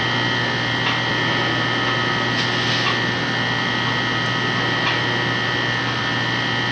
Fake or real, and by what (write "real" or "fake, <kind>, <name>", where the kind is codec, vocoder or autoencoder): real